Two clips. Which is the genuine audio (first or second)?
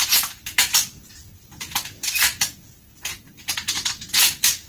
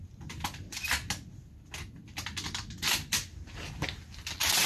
second